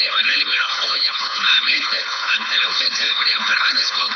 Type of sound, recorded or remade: remade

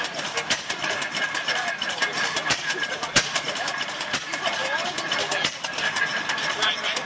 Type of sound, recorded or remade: remade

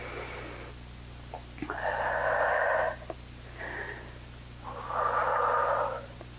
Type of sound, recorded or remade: recorded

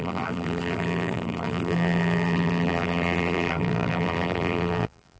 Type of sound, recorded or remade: remade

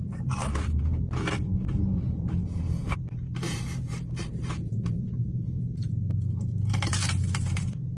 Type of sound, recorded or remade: remade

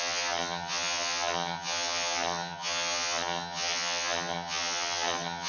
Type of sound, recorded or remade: remade